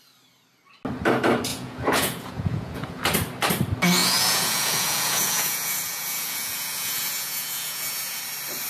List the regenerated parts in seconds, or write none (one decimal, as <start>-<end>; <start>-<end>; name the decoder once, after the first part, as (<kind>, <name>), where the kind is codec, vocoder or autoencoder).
1.5-3.0 (vocoder, Vocos); 4.0-8.2